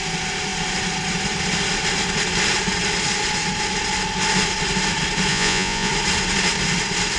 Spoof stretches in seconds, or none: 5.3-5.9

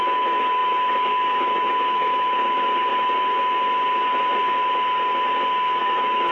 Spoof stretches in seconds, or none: 0.0-2.9; 5.8-6.3

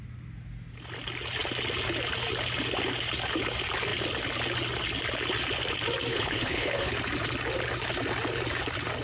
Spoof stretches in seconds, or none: 6.1-6.9

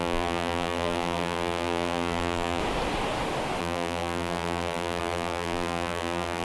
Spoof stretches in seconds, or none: 0.0-2.6; 3.6-6.4

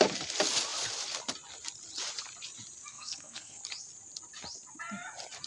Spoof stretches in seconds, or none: 2.9-3.6

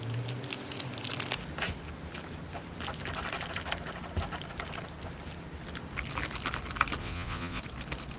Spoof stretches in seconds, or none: 7.0-7.6

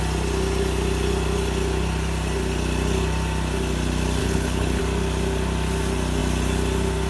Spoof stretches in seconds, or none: 4.2-4.8